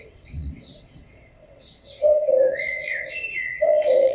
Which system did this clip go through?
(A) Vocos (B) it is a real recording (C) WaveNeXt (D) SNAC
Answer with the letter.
C